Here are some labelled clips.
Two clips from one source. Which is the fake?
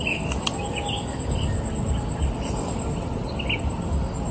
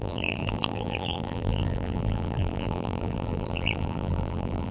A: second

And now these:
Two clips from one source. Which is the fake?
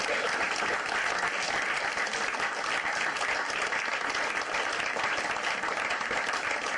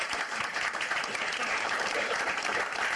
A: second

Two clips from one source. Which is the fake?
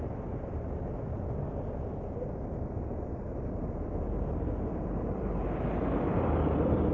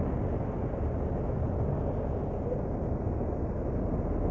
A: first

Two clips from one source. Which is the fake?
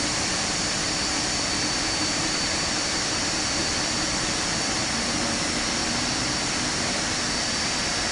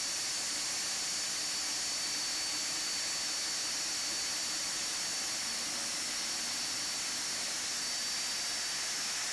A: first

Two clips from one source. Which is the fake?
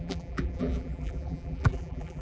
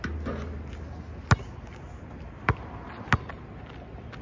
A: first